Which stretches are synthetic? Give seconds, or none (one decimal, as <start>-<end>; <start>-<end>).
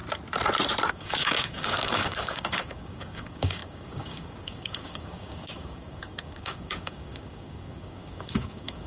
0.9-8.9